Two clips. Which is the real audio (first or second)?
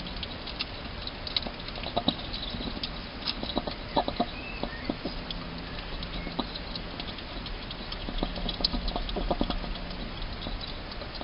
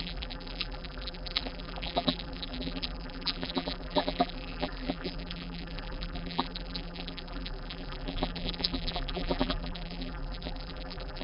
first